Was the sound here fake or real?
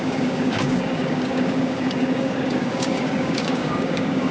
fake